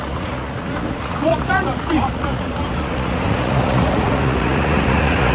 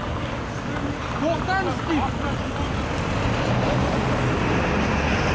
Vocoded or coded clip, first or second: first